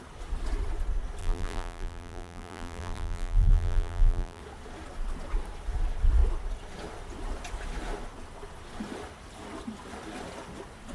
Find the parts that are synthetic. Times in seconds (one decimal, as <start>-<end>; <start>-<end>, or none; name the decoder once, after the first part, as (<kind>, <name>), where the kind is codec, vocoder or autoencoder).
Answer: 1.2-4.4 (vocoder, BigVGAN v2)